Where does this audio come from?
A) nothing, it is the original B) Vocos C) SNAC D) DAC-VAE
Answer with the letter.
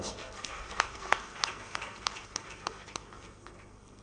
C